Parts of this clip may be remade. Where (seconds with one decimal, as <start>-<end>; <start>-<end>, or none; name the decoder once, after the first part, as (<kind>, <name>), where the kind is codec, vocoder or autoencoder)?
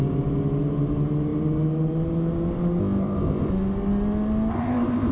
2.8-3.5 (codec, ZipCodec); 4.5-5.1